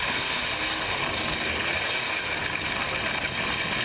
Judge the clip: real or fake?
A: real